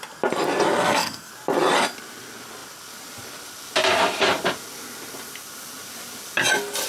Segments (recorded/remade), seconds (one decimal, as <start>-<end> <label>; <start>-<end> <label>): 0.0-0.8 recorded; 0.8-1.3 remade; 1.3-6.9 recorded